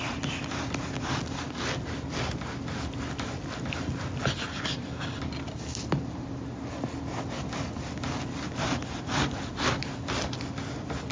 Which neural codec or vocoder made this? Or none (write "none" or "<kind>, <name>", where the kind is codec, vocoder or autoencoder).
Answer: none